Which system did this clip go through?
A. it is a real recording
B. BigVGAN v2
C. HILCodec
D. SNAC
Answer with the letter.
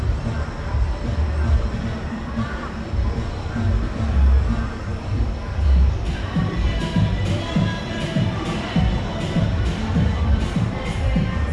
B